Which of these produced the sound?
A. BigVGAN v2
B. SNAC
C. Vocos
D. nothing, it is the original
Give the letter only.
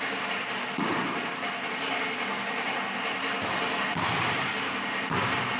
D